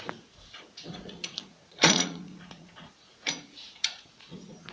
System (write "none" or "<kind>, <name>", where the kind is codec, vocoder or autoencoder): vocoder, Vocos